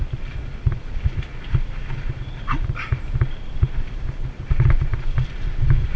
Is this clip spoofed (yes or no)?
yes